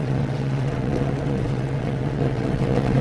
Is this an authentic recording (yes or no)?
no